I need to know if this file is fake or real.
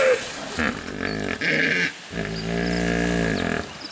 real